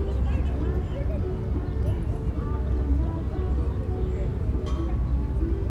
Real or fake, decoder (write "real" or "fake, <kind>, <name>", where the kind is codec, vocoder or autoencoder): real